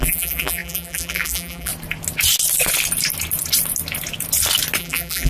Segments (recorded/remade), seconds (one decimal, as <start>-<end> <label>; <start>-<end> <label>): 0.0-1.7 remade; 1.7-4.8 recorded; 4.8-5.3 remade